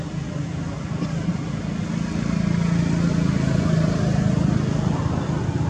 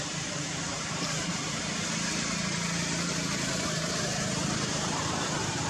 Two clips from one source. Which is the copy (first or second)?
second